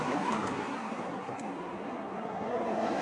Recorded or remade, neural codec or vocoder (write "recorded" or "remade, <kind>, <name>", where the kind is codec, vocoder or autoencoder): remade, codec, SNAC